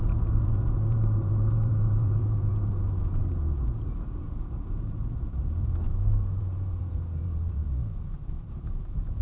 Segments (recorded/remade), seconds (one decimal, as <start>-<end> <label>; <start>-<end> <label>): 0.0-9.2 remade